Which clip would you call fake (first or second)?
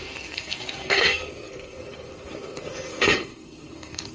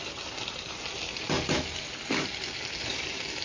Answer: first